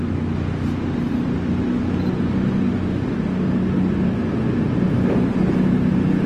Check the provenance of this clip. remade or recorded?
recorded